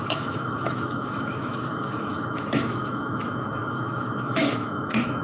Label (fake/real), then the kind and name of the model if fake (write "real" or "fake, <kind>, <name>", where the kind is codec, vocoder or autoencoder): fake, autoencoder, DAC-VAE